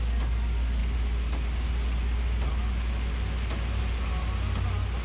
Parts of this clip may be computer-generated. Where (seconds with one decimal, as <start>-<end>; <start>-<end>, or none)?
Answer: none